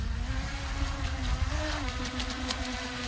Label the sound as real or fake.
real